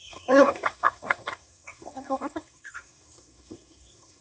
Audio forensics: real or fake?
fake